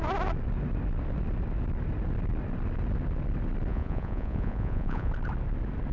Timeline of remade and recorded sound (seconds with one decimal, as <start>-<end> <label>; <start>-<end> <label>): 0.0-3.7 recorded; 3.7-5.1 remade; 5.1-5.9 recorded